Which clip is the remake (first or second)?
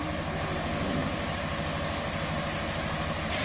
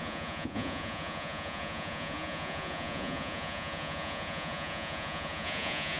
second